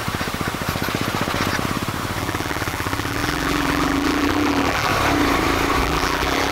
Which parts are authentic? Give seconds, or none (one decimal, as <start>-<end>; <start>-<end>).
0.0-2.2; 4.9-5.8